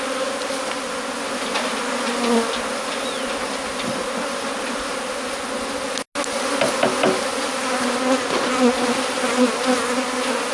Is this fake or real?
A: real